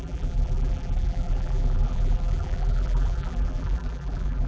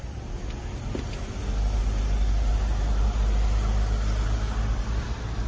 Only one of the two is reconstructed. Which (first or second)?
first